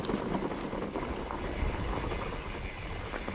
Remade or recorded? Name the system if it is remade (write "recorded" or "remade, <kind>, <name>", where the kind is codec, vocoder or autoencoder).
recorded